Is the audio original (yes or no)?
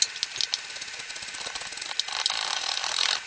yes